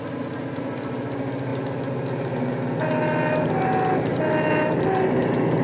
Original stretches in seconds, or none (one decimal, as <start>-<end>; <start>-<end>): 0.0-5.6